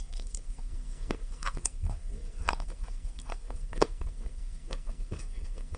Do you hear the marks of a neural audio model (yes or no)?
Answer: yes